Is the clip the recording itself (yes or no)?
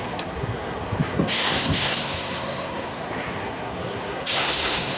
no